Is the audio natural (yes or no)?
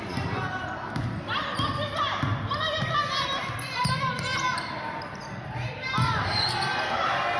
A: yes